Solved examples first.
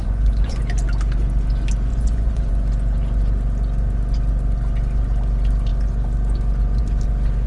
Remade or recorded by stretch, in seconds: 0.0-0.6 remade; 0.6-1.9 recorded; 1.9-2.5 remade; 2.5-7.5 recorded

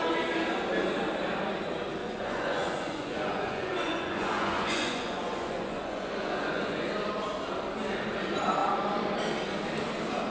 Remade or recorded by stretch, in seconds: 0.0-2.0 recorded; 2.0-6.9 remade; 6.9-10.3 recorded

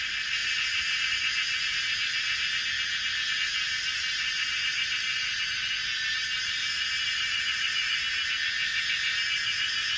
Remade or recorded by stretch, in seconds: 0.0-10.0 recorded

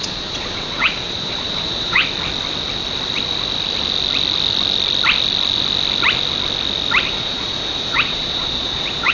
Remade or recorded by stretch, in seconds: 0.0-2.0 remade; 2.0-7.1 recorded; 7.1-9.1 remade

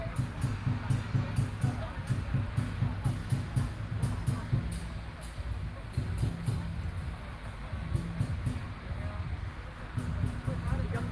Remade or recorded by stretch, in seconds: 0.0-11.1 recorded

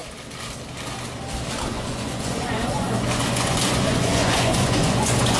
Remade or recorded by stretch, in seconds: 0.0-1.7 recorded; 1.7-5.4 remade

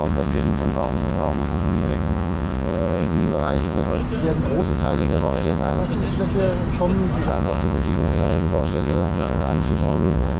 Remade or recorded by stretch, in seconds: 0.0-4.0 remade; 4.0-4.6 recorded; 4.6-5.8 remade; 5.8-7.3 recorded; 7.3-10.4 remade

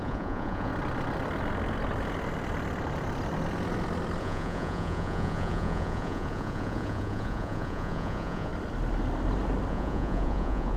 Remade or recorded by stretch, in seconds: 0.0-0.7 remade; 0.7-4.2 recorded; 4.2-8.5 remade; 8.5-9.7 recorded; 9.7-10.8 remade